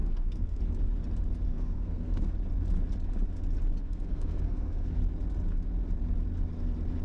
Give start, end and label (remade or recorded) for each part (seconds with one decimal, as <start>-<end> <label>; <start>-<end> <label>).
0.0-0.6 remade; 0.6-1.5 recorded; 1.5-2.3 remade; 2.3-3.8 recorded; 3.8-5.0 remade; 5.0-7.0 recorded